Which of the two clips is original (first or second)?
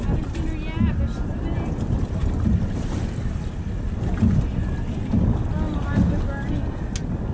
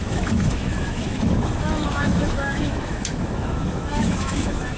first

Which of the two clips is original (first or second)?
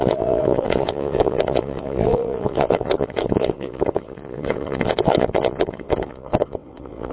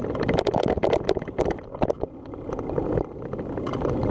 second